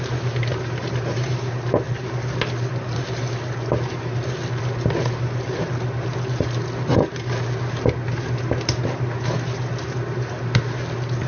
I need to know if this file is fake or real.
real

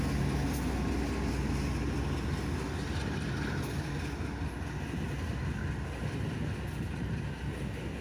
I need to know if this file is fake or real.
real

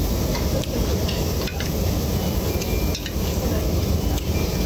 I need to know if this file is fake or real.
real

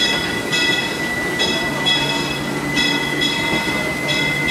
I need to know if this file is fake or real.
real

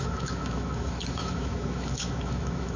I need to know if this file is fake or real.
fake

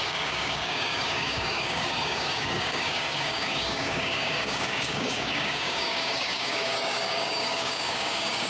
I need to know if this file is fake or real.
fake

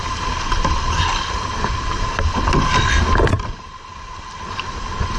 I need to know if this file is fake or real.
real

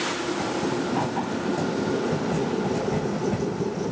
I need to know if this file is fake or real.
real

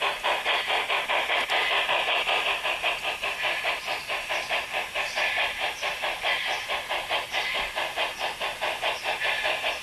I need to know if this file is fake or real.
real